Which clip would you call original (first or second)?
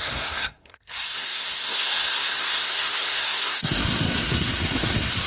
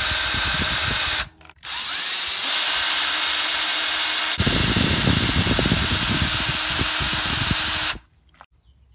second